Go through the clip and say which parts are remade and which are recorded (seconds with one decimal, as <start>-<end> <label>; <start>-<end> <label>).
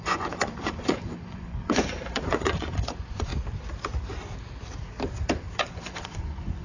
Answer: 0.0-3.3 remade; 3.3-5.6 recorded; 5.6-6.6 remade